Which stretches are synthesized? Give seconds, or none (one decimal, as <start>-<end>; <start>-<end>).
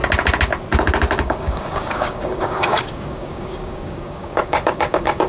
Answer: 1.2-5.3